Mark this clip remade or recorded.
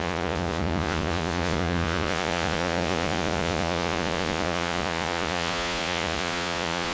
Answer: remade